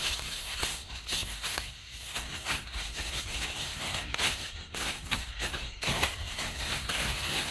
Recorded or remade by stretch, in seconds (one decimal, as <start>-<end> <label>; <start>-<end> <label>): 0.0-7.5 remade